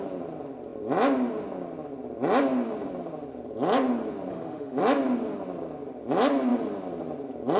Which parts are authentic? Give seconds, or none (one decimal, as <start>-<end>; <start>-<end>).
0.0-4.3; 4.8-7.6